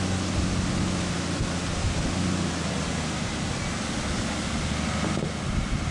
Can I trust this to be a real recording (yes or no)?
yes